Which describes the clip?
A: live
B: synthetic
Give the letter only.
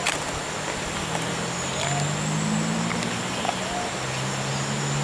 A